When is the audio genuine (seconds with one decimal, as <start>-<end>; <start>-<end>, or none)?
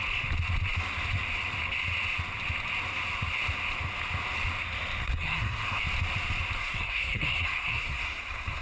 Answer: 0.0-5.0; 5.8-6.6